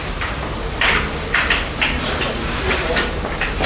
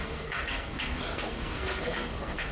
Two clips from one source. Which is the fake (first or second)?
second